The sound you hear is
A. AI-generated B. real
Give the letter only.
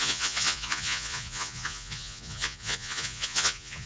A